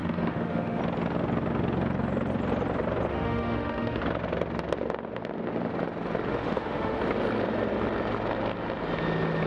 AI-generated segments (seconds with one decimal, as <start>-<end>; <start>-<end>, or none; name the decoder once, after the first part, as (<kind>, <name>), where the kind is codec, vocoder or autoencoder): 0.0-0.8 (autoencoder, DAC-VAE); 3.1-4.0; 6.3-7.0